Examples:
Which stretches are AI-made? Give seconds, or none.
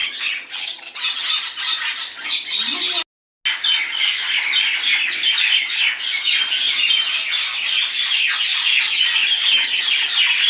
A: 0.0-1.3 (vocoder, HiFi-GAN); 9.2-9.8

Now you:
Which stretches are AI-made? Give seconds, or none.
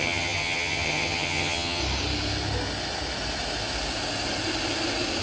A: 0.0-1.8 (vocoder, HiFi-GAN)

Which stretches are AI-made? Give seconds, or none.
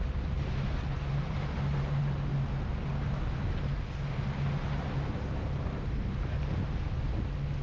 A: none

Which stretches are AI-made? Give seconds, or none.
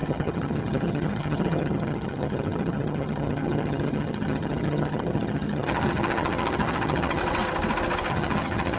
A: 0.0-7.2 (vocoder, HiFi-GAN); 8.1-8.8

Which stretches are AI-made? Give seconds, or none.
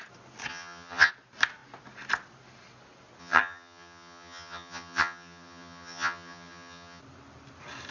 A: 0.5-1.1 (vocoder, HiFi-GAN); 3.2-7.0